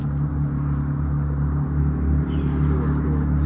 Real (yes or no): yes